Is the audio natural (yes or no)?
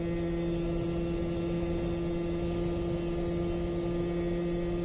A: yes